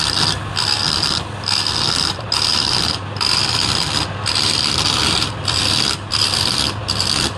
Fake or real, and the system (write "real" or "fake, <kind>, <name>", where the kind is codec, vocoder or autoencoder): real